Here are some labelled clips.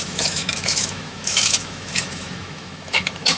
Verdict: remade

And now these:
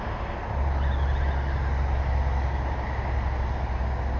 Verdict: recorded